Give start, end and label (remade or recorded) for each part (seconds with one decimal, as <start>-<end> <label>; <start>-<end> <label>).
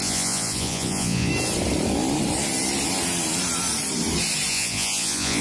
0.0-1.3 remade; 1.3-4.5 recorded; 4.5-5.4 remade